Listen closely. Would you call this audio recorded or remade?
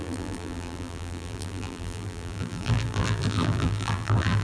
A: remade